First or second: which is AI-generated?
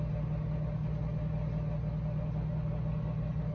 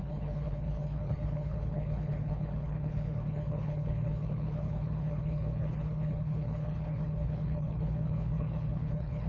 second